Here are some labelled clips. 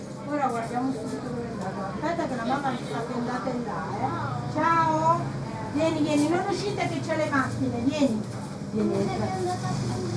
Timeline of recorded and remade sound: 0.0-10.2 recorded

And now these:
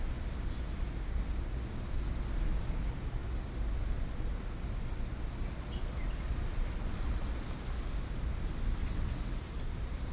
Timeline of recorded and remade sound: 0.0-8.8 recorded; 8.8-9.4 remade; 9.4-10.1 recorded

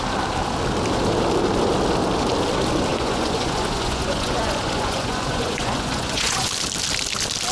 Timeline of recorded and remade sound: 0.0-2.9 recorded; 2.9-6.5 remade; 6.5-7.5 recorded